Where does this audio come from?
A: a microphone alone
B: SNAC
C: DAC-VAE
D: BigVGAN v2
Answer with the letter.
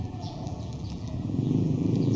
D